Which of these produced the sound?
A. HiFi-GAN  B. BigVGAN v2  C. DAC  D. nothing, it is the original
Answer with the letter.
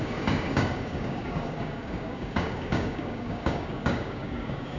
C